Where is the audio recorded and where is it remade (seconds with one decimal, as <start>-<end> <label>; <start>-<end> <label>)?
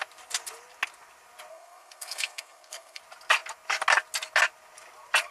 0.0-1.5 recorded; 1.5-3.0 remade; 3.0-5.3 recorded